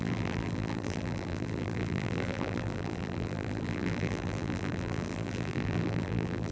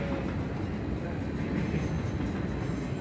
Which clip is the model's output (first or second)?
first